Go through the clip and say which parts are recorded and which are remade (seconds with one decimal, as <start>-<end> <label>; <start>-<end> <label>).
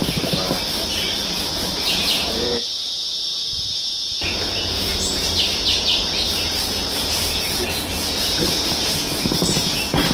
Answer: 0.0-1.5 recorded; 1.5-5.2 remade; 5.2-6.7 recorded; 6.7-10.1 remade